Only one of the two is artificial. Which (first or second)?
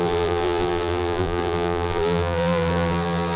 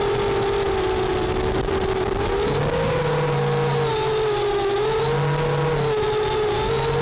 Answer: first